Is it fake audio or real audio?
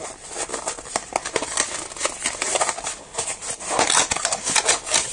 real